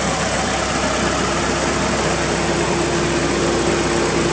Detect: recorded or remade recorded